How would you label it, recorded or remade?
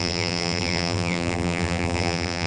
remade